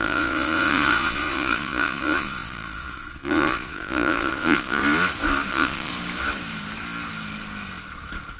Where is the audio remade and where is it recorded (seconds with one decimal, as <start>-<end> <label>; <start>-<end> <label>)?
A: 0.0-4.8 remade; 4.8-5.5 recorded; 5.5-5.9 remade; 5.9-8.4 recorded